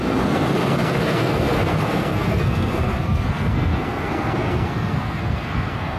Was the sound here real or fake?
fake